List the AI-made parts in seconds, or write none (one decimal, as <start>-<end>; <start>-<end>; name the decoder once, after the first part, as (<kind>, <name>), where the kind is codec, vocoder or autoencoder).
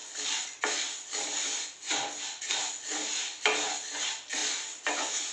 none